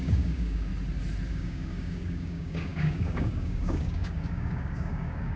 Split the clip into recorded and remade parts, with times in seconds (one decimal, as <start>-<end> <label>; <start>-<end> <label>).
0.0-0.7 remade; 0.7-1.3 recorded; 1.3-5.4 remade